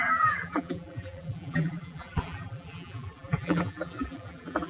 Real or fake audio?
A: fake